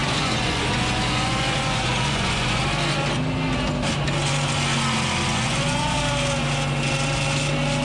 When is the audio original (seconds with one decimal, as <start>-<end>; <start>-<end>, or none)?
2.6-5.3; 6.0-7.8